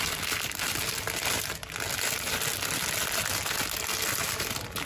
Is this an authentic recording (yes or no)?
yes